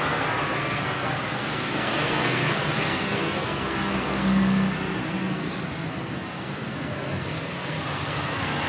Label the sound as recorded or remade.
remade